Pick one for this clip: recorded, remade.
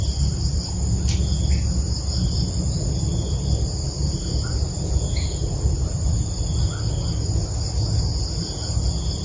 recorded